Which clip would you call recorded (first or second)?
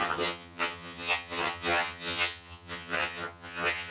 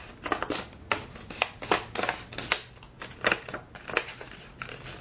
second